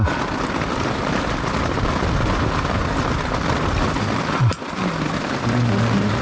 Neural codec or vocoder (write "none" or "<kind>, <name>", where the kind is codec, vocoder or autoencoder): none